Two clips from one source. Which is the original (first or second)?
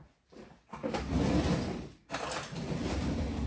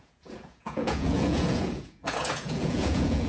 first